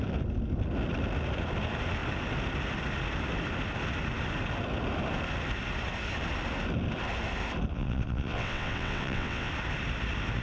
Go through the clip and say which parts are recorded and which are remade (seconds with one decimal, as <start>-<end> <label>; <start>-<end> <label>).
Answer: 0.0-7.7 recorded; 7.7-9.5 remade; 9.5-10.4 recorded